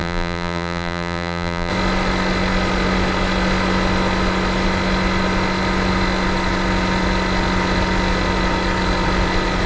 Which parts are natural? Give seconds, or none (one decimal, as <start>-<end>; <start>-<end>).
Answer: 1.7-9.7

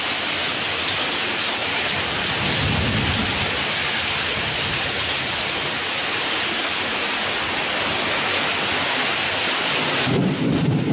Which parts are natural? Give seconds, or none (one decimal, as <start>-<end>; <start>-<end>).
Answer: 0.0-1.6; 2.6-4.3; 6.6-10.9